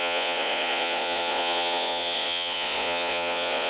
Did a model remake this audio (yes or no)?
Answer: yes